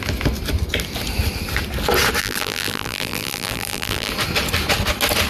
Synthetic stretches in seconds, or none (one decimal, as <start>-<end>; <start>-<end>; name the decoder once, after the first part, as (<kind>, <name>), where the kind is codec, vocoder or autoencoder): 2.2-4.1 (vocoder, BigVGAN v2)